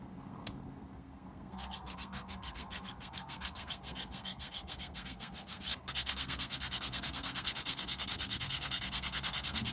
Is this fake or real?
fake